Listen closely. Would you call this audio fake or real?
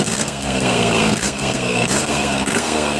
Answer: fake